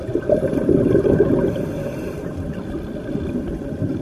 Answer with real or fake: fake